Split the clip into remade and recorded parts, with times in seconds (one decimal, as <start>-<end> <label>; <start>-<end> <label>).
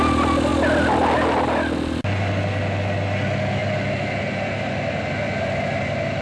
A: 0.0-6.2 recorded